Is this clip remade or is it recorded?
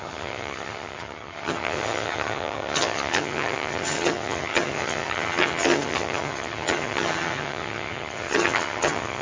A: remade